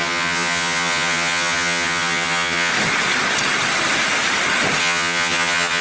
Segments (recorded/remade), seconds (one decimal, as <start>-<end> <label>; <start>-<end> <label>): 0.0-2.7 remade; 2.7-4.8 recorded; 4.8-5.8 remade